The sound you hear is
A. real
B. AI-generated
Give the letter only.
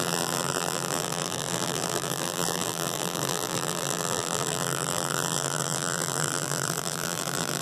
B